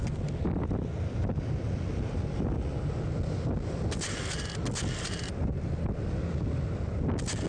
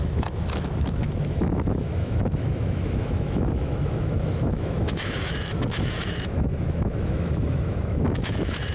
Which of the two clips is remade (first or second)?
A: second